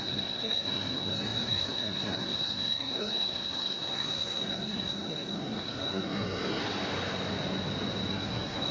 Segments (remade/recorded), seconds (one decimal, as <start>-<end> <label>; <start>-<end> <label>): 0.0-6.6 remade; 6.6-8.1 recorded; 8.1-8.7 remade

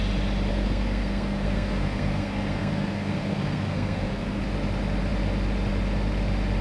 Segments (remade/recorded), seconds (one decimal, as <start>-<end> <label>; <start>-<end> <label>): 0.0-0.5 recorded; 0.5-4.4 remade; 4.4-6.6 recorded

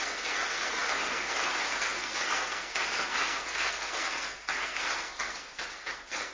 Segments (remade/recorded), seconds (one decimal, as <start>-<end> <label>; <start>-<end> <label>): 0.0-6.3 remade

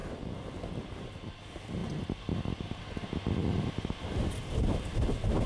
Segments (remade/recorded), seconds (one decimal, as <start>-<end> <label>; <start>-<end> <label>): 0.0-5.5 recorded

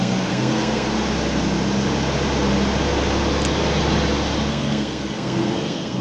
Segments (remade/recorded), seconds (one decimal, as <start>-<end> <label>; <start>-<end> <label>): 0.0-0.9 remade; 0.9-4.5 recorded; 4.5-6.0 remade